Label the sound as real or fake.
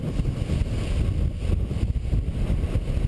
real